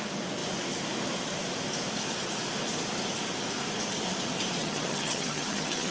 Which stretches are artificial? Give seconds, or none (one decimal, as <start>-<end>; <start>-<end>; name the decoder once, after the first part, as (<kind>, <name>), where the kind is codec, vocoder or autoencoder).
4.6-5.9 (vocoder, HiFi-GAN)